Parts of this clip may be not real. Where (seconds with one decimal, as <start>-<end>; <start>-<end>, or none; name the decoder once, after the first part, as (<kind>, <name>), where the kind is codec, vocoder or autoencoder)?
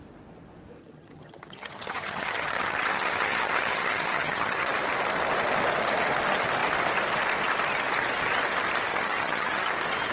0.8-4.7 (vocoder, HiFi-GAN); 8.9-9.7